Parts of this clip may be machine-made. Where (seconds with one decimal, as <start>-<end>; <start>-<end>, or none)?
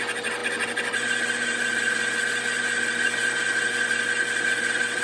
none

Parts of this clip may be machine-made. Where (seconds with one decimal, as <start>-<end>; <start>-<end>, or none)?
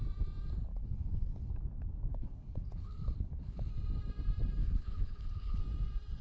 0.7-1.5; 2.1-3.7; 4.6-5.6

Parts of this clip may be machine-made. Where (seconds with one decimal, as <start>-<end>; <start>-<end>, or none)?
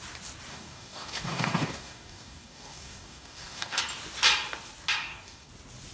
0.5-3.8; 5.0-5.5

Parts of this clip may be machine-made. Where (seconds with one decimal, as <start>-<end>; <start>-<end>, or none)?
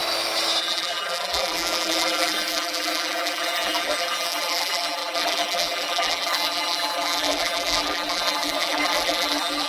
0.6-9.7